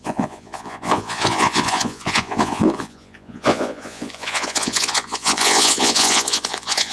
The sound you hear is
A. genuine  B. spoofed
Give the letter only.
B